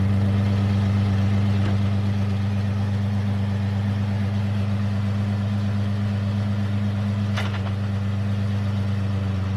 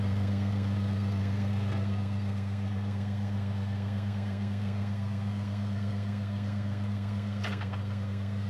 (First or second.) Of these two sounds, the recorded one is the first